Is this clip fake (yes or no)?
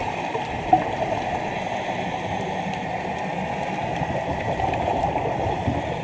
no